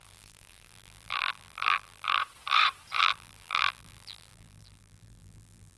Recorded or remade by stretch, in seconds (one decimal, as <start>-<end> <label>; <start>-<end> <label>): 0.0-2.2 remade; 2.2-3.0 recorded; 3.0-5.8 remade